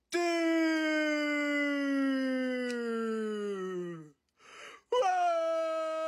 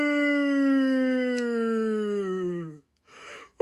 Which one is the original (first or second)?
first